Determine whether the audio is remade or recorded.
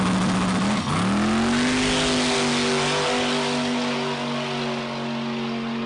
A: recorded